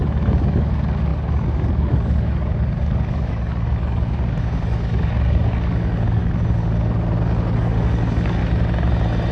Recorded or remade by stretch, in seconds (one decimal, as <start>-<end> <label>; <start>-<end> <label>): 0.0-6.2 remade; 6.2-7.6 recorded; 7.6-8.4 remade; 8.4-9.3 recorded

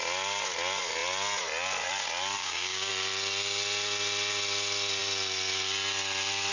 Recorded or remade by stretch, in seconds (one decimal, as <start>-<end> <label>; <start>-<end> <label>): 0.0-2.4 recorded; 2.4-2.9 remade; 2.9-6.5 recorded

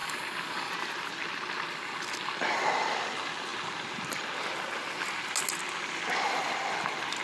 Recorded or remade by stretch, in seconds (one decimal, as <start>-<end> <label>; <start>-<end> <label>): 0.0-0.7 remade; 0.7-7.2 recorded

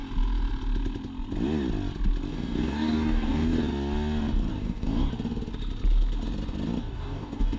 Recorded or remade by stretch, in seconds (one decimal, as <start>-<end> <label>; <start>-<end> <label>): 0.0-2.3 recorded; 2.3-3.6 remade; 3.6-4.5 recorded; 4.5-5.1 remade; 5.1-6.8 recorded; 6.8-7.6 remade

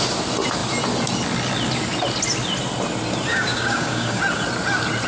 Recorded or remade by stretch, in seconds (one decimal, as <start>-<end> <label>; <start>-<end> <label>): 0.0-3.3 recorded; 3.3-4.2 remade; 4.2-5.1 recorded

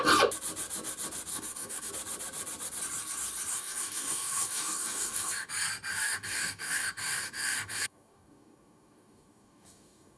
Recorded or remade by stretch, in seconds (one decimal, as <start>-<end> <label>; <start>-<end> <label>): 0.0-1.3 recorded; 1.3-1.9 remade; 1.9-3.5 recorded; 3.5-5.5 remade; 5.5-5.9 recorded; 5.9-10.2 remade

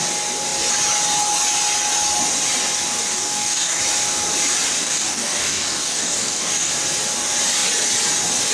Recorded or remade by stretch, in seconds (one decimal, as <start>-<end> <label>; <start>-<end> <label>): 0.0-3.1 recorded; 3.1-3.8 remade; 3.8-4.8 recorded; 4.8-6.7 remade; 6.7-8.5 recorded

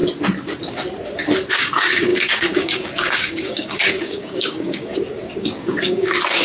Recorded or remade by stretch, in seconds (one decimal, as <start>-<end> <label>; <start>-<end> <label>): 0.0-1.5 recorded; 1.5-4.9 remade; 4.9-5.4 recorded; 5.4-6.4 remade